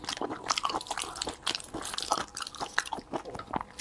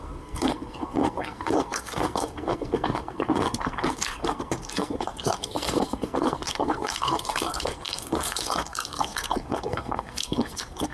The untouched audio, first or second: first